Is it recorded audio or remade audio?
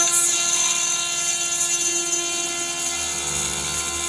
recorded